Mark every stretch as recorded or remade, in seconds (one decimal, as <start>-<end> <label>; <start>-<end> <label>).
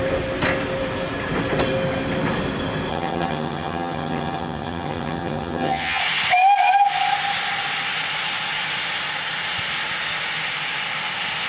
0.0-2.9 recorded; 2.9-6.0 remade; 6.0-11.5 recorded